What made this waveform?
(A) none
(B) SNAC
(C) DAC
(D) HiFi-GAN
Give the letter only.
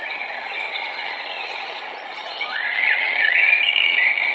D